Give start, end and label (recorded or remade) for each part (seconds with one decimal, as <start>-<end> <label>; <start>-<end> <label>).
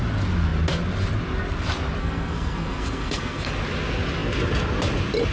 0.0-2.0 recorded; 2.0-3.5 remade; 3.5-5.3 recorded